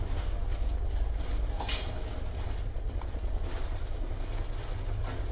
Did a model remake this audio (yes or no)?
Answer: no